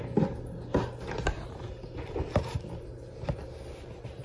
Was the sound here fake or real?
real